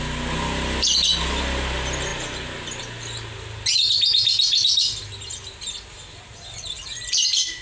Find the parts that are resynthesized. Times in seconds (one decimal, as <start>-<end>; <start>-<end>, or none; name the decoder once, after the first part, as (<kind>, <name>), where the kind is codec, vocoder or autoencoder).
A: none